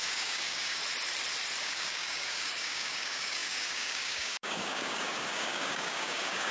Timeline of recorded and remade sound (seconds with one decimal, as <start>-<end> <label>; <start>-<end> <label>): 0.0-0.8 remade; 0.8-1.6 recorded; 1.6-6.5 remade